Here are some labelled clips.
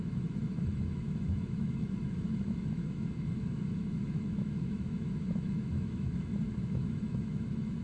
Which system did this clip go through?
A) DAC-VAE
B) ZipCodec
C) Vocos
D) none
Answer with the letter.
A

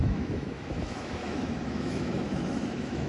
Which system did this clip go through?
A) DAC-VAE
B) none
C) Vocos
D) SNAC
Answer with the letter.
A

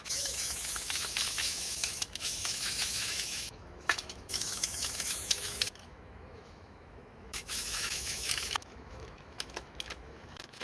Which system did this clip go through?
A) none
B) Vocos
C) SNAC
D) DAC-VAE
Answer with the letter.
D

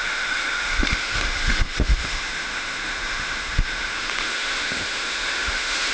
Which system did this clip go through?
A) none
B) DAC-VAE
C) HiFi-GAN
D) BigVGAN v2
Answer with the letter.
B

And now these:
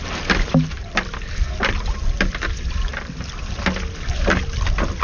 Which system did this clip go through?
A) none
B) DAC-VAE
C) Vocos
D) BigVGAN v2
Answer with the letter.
A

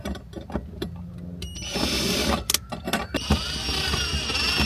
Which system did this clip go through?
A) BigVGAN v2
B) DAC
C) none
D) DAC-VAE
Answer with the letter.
C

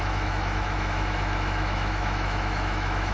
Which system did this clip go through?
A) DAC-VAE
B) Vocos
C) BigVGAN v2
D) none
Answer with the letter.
A